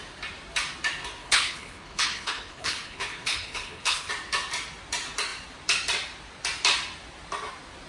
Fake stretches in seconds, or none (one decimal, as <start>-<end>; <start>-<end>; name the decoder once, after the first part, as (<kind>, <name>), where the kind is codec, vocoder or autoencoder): 1.2-4.1 (codec, HILCodec)